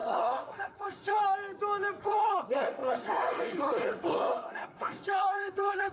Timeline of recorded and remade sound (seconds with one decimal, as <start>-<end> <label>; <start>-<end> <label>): 0.0-1.2 remade; 1.2-2.0 recorded; 2.0-5.9 remade